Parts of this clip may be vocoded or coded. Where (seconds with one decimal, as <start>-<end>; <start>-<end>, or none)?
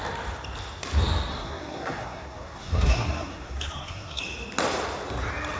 1.3-4.2